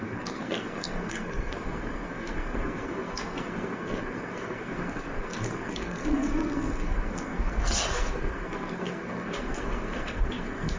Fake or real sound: fake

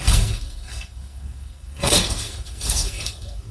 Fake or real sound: fake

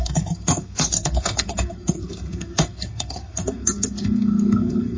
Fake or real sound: fake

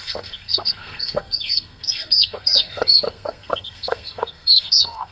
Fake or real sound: fake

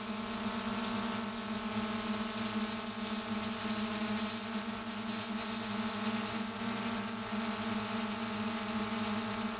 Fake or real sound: real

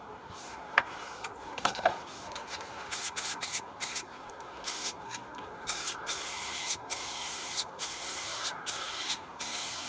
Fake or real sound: fake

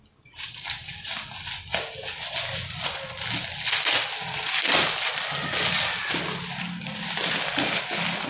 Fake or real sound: real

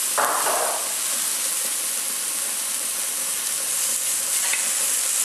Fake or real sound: real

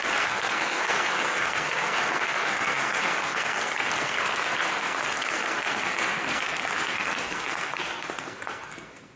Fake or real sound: fake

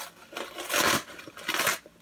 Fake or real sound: real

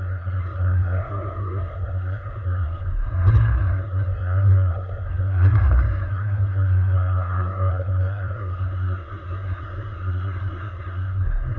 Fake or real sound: fake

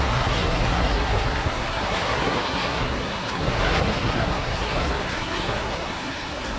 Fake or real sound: fake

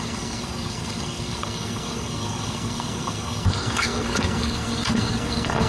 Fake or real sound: fake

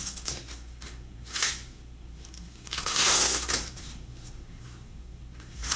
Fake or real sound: fake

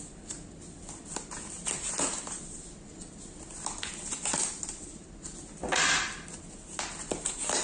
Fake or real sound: real